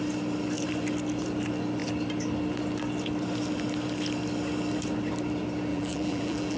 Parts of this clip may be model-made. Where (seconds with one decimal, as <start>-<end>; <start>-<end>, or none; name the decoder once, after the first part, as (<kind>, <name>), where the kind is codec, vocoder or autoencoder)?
5.7-6.6 (vocoder, BigVGAN v2)